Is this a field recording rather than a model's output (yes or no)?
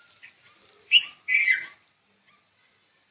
yes